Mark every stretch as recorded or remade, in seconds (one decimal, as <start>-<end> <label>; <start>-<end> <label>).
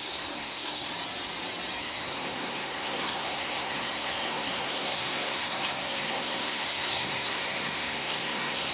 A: 0.0-0.9 remade; 0.9-1.8 recorded; 1.8-8.7 remade